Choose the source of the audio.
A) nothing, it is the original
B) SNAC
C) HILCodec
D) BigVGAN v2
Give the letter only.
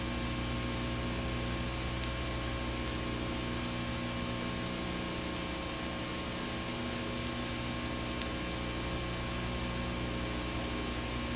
A